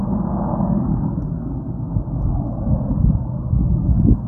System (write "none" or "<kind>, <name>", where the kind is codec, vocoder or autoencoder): none